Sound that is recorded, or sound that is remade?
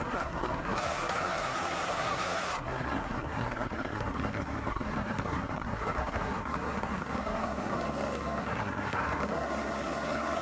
remade